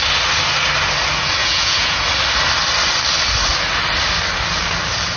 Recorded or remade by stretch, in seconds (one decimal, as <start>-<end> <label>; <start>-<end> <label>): 0.0-1.4 recorded; 1.4-2.0 remade; 2.0-5.2 recorded